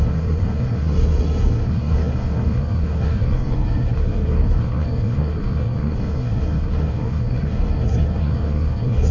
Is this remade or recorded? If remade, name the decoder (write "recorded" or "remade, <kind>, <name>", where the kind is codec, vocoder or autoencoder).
remade, codec, SNAC